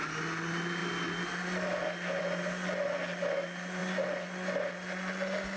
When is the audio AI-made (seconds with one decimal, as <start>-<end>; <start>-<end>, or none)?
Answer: none